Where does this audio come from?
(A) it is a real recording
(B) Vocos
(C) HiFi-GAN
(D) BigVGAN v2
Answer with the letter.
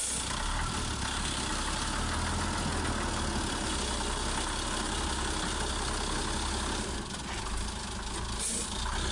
A